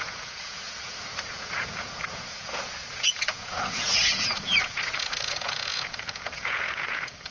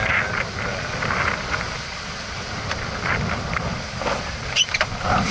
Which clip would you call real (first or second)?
second